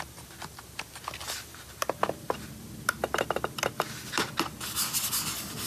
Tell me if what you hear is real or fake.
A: real